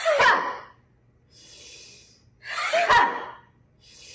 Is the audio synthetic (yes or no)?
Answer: no